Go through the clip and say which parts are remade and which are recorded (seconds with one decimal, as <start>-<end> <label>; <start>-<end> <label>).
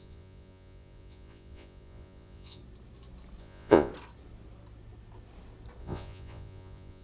0.0-2.6 remade; 2.6-3.4 recorded; 3.4-3.9 remade; 3.9-5.8 recorded; 5.8-7.0 remade